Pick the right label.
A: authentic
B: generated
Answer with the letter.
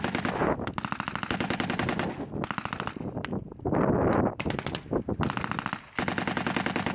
A